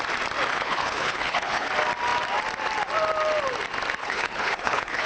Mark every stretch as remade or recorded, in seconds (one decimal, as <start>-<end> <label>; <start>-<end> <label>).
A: 0.0-0.5 recorded; 0.5-1.7 remade; 1.7-4.0 recorded; 4.0-5.1 remade